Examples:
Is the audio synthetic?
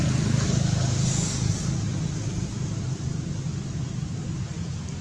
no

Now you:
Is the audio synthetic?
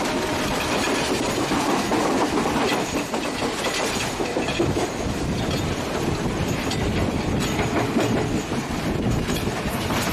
no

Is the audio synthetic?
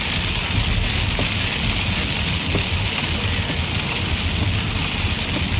no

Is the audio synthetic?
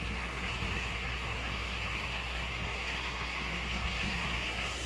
yes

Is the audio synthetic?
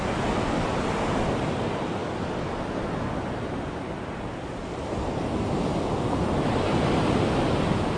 no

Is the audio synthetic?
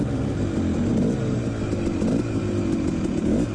no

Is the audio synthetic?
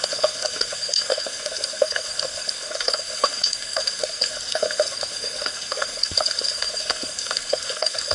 yes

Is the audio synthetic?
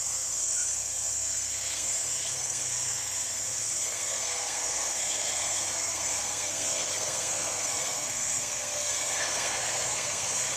yes